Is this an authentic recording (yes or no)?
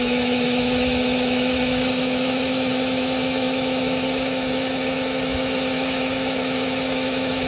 no